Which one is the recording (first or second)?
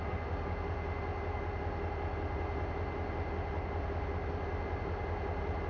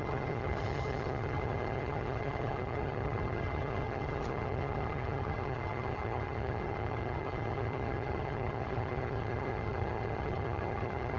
first